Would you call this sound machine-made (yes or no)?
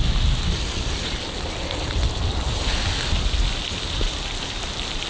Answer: no